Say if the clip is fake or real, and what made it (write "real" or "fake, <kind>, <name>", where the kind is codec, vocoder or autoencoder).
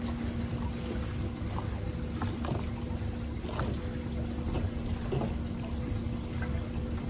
real